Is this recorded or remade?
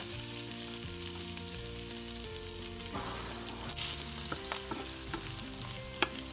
recorded